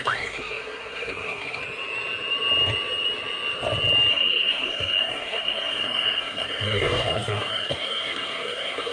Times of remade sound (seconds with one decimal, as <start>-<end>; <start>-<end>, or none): 0.0-1.6; 4.1-8.9